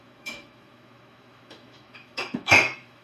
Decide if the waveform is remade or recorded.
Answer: remade